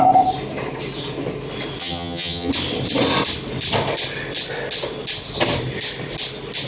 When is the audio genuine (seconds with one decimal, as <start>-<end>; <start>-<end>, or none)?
0.0-1.8; 2.5-6.7